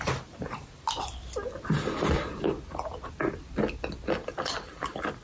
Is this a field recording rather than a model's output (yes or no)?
yes